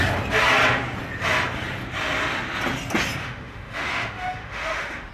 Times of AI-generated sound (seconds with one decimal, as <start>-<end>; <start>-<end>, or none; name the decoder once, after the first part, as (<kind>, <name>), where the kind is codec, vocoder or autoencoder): 3.2-5.1 (autoencoder, DAC-VAE)